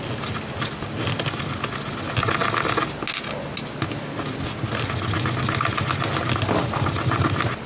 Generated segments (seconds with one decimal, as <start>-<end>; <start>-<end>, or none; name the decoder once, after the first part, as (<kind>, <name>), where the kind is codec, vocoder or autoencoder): none